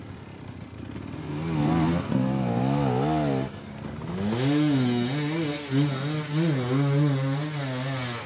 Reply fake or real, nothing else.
real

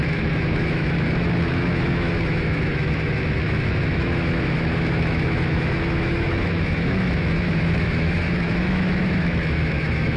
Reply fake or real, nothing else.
fake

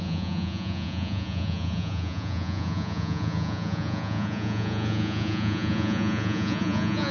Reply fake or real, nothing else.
fake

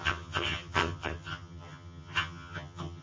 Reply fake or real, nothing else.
fake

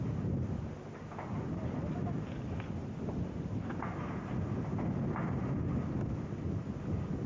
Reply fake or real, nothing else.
real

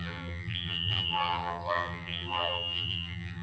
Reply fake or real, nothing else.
fake